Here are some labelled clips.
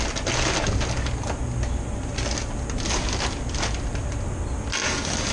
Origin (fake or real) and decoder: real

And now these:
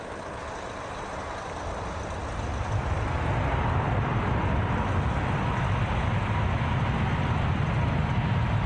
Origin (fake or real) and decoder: real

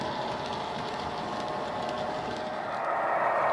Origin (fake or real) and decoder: real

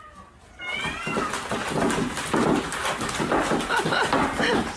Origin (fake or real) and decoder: real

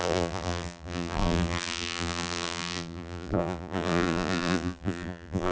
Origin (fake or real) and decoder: fake, vocoder, BigVGAN v2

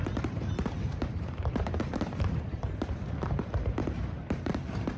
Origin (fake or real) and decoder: fake, vocoder, BigVGAN v2